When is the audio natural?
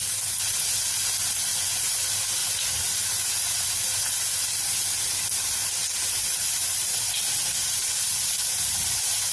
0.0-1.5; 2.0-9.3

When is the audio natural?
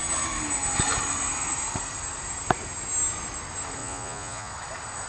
0.0-3.8; 4.5-5.1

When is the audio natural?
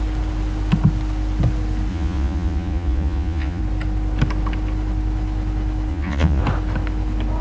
0.0-1.9; 3.6-5.9; 6.4-7.4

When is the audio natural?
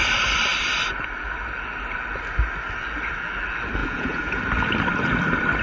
0.0-3.8; 4.4-5.6